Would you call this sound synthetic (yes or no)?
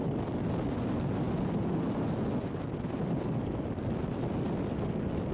no